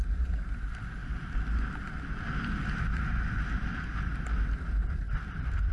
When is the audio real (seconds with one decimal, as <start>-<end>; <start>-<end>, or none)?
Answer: 0.0-5.7